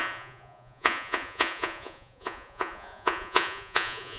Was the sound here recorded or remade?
remade